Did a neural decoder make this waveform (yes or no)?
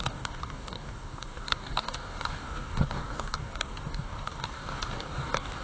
yes